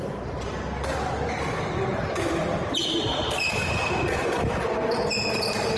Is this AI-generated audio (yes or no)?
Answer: no